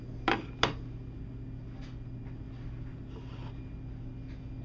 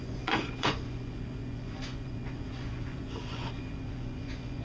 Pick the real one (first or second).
first